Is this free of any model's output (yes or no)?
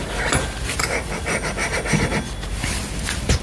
yes